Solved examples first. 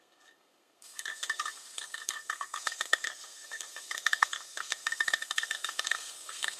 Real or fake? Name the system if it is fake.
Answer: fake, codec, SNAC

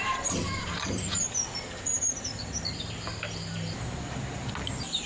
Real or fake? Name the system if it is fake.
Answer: fake, vocoder, BigVGAN v2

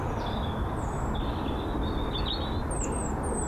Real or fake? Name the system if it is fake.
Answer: real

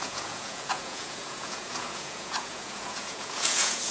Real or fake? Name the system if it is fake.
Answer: fake, vocoder, Vocos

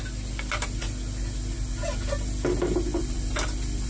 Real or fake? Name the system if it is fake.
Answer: real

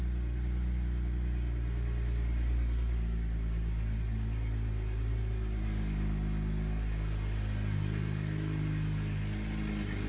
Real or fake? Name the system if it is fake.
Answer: real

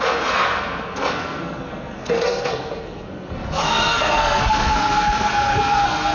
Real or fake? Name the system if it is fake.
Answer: fake, codec, SNAC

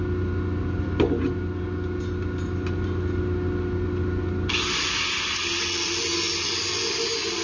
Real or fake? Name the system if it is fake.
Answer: real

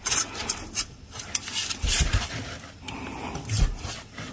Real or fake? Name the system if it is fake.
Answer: real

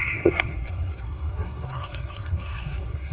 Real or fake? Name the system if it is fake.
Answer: fake, codec, SNAC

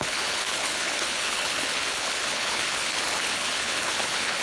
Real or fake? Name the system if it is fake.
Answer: fake, codec, HILCodec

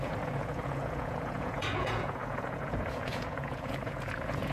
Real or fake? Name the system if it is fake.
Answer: fake, vocoder, Vocos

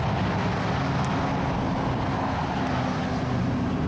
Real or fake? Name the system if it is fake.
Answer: real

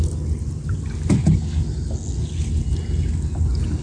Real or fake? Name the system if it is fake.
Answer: real